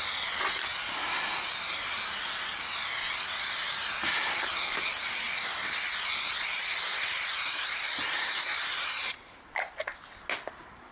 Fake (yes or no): no